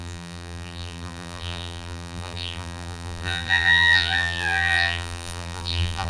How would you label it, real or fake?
fake